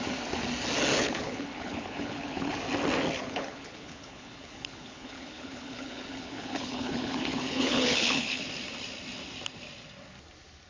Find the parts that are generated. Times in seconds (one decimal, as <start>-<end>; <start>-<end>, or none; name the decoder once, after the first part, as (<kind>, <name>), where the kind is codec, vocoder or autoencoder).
0.9-2.5 (codec, HILCodec); 3.2-8.4

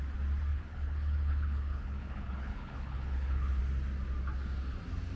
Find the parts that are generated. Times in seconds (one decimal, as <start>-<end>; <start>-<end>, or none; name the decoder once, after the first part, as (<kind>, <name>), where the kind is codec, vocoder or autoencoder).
0.5-3.6 (codec, HILCodec)